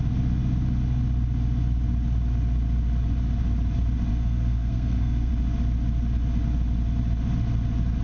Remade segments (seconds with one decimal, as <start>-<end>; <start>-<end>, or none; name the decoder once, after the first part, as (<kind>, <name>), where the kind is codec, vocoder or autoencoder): 4.1-5.3 (codec, SNAC)